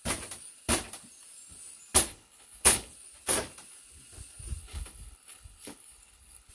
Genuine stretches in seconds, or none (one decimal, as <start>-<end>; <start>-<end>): 0.0-2.1; 2.9-4.6